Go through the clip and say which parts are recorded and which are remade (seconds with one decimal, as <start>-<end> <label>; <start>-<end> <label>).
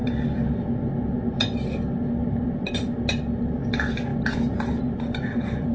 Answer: 0.0-5.7 recorded